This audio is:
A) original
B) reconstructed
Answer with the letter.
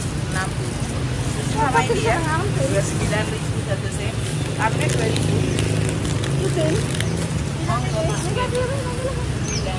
A